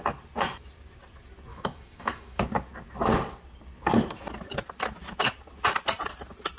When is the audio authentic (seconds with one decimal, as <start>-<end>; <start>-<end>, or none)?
0.0-1.5; 2.4-6.6